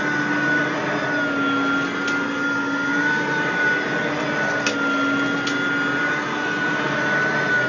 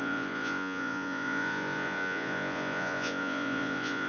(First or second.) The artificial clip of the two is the second